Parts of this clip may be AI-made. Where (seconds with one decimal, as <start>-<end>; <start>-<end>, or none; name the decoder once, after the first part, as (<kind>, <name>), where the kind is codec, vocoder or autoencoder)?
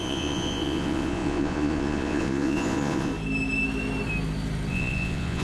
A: 0.0-3.1 (vocoder, Vocos); 4.7-5.4